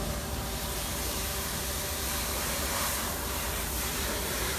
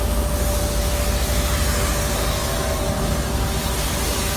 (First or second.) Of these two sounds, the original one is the second